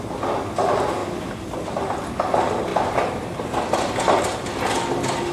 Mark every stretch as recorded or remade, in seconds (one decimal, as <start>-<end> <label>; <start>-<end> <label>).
0.0-2.7 recorded; 2.7-3.6 remade; 3.6-5.3 recorded